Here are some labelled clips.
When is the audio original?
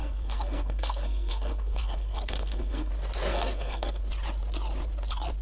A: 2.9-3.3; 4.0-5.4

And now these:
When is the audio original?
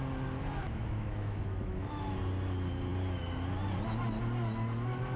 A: 0.0-0.6; 2.2-5.2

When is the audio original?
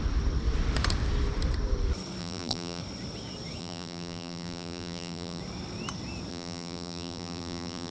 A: 0.0-2.2; 2.8-3.6; 5.4-6.3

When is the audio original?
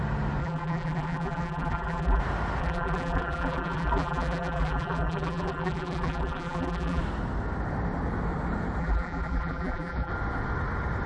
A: 0.0-0.4; 2.2-2.6; 7.0-8.8; 10.1-11.1